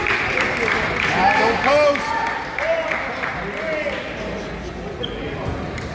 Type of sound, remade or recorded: recorded